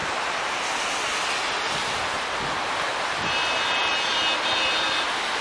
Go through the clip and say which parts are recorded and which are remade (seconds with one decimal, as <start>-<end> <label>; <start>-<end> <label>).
0.0-5.4 recorded